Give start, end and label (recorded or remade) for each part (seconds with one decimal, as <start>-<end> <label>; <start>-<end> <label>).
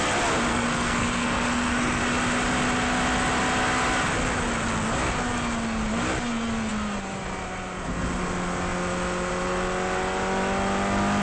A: 0.0-0.5 recorded; 0.5-2.0 remade; 2.0-11.2 recorded